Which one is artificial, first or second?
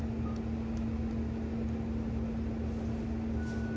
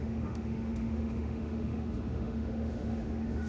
second